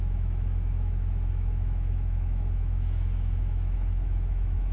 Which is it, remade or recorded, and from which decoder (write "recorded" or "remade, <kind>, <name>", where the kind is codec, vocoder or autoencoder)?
remade, autoencoder, DAC-VAE